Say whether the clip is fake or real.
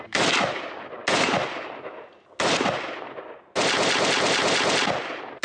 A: real